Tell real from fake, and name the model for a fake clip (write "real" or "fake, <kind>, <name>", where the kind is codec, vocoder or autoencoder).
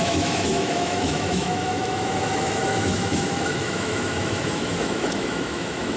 fake, autoencoder, DAC-VAE